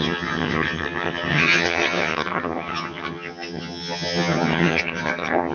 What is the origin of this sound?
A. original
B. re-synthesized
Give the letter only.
B